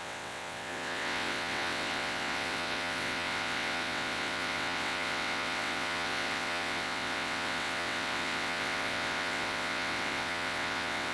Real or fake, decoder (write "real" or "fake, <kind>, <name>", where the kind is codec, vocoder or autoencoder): fake, vocoder, WaveNeXt